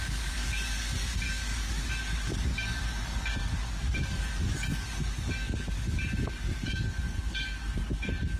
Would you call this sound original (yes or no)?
no